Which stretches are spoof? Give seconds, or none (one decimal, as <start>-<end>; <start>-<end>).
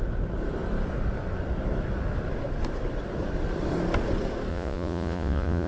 4.5-5.7